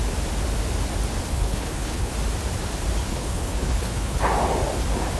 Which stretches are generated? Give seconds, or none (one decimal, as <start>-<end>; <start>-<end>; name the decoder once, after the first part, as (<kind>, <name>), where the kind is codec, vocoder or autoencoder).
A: 1.3-2.1 (codec, HILCodec); 3.1-4.2